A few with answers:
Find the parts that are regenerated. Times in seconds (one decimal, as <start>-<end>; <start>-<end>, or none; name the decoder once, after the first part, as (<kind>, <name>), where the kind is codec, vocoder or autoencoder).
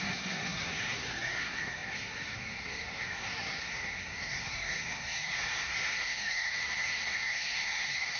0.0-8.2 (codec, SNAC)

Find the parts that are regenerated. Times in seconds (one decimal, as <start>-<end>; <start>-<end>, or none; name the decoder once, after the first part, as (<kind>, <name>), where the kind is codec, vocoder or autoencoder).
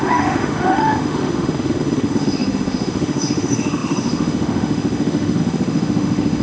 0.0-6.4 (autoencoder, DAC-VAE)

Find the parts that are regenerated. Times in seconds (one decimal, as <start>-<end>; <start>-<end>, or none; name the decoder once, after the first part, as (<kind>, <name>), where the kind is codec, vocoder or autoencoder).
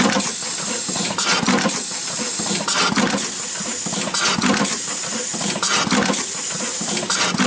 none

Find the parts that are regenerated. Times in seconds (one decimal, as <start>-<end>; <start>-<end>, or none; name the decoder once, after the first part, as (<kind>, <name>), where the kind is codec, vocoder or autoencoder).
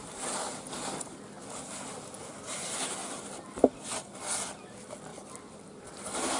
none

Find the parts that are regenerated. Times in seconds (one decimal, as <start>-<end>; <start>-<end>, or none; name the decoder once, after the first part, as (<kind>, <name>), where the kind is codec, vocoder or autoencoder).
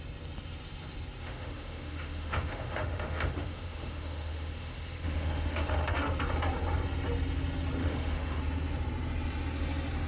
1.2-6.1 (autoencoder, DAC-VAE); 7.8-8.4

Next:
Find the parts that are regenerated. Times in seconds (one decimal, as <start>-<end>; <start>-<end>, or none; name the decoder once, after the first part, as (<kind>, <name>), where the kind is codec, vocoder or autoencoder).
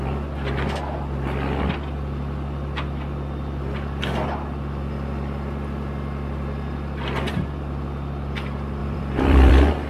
8.8-9.5 (vocoder, BigVGAN v2)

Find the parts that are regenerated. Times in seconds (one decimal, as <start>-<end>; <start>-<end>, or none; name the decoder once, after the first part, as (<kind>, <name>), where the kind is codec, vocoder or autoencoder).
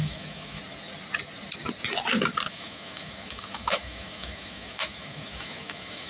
0.0-0.6 (autoencoder, DAC-VAE); 2.5-6.1